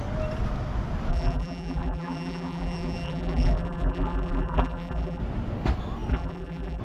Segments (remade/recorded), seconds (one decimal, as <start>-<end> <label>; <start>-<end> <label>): 0.0-1.1 recorded; 1.1-5.2 remade; 5.2-6.1 recorded; 6.1-6.8 remade